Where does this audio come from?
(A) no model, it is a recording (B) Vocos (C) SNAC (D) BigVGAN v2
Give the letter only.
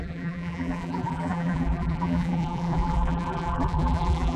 D